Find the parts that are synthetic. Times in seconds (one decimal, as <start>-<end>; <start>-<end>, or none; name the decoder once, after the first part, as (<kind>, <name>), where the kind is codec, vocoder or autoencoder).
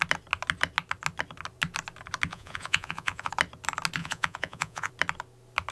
2.3-3.3 (vocoder, Vocos); 4.0-4.9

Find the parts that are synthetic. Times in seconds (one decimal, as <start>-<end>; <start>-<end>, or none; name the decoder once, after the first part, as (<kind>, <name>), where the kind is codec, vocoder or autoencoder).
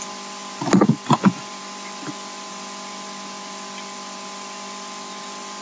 none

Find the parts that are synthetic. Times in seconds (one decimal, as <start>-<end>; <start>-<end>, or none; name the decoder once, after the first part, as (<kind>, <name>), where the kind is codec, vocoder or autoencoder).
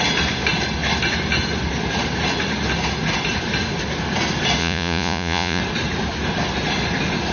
4.6-5.6 (vocoder, Vocos)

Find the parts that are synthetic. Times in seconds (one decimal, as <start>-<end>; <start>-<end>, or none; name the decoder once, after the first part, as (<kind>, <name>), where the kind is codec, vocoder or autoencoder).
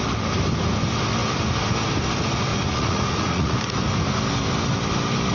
2.5-3.6 (vocoder, Vocos)